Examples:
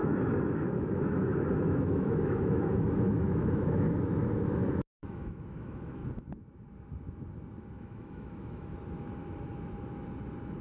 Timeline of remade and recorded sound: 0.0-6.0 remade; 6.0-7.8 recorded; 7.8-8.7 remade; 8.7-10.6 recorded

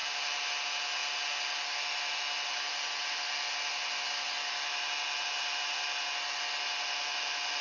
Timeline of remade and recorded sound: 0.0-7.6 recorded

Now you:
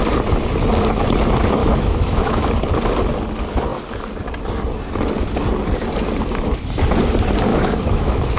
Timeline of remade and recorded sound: 0.0-1.6 recorded; 1.6-2.5 remade; 2.5-7.5 recorded; 7.5-8.4 remade